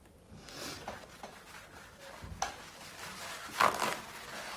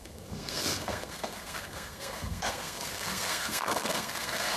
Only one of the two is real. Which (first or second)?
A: first